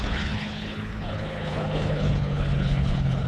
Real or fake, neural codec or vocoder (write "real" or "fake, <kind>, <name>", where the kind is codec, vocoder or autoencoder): fake, codec, HILCodec